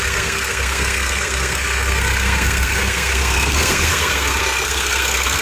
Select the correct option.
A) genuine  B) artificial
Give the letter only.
B